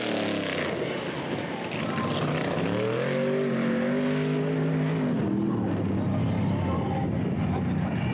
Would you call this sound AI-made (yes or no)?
no